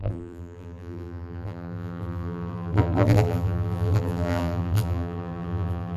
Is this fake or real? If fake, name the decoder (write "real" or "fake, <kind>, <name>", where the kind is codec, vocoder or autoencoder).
fake, vocoder, BigVGAN v2